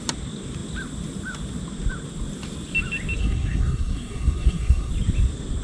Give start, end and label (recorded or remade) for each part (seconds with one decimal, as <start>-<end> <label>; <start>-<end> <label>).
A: 0.0-3.2 recorded; 3.2-4.9 remade; 4.9-5.6 recorded

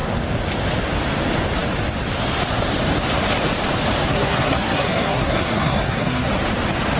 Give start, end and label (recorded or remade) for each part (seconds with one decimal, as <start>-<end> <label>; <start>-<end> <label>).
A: 0.0-4.1 recorded; 4.1-6.3 remade; 6.3-7.0 recorded

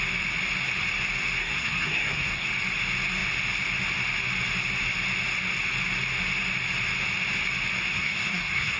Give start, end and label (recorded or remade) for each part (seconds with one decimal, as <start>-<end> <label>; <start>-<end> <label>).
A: 0.0-1.4 recorded; 1.4-2.5 remade; 2.5-7.9 recorded; 7.9-8.8 remade